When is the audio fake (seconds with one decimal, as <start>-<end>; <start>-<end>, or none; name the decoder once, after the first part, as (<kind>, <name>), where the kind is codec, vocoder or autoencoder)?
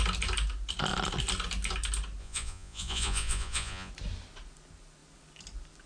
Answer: 2.2-3.9 (vocoder, Vocos)